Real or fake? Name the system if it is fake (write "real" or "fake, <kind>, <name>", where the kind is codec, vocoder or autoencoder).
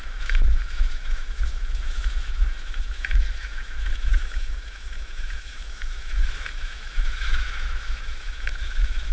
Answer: fake, autoencoder, DAC-VAE